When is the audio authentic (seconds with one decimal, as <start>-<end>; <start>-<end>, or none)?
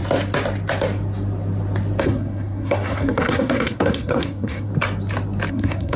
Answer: 0.0-2.0; 4.7-5.5